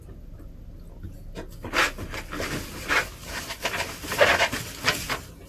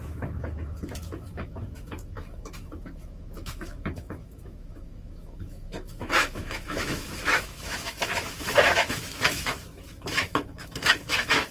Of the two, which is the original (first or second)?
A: first